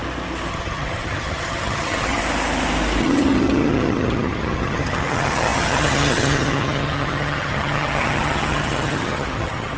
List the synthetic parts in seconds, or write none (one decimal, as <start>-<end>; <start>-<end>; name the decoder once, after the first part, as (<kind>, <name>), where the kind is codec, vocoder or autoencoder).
0.5-2.2 (vocoder, HiFi-GAN); 3.0-9.8